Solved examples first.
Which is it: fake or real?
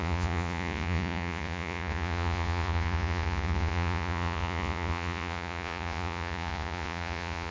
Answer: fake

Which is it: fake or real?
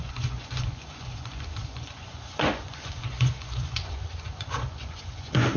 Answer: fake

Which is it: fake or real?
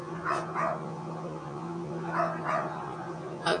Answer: fake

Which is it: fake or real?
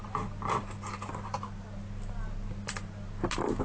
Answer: real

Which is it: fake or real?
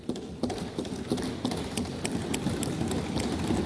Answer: real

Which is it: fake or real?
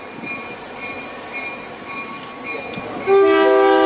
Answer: real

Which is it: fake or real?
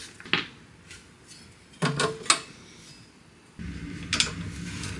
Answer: real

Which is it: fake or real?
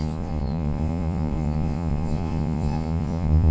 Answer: fake